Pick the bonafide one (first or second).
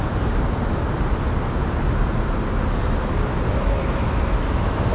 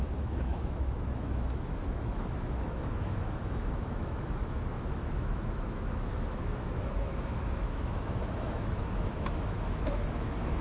first